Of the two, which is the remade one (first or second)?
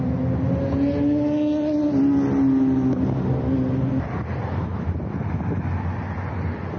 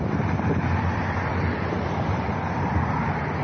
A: second